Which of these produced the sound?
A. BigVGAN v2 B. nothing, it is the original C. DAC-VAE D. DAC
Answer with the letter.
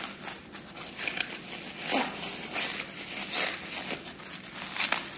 B